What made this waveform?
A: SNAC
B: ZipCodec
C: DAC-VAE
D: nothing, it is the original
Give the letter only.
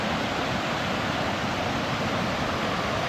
D